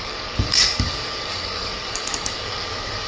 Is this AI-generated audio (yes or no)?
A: yes